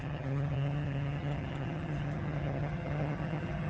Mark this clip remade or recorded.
remade